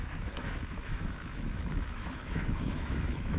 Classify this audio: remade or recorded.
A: remade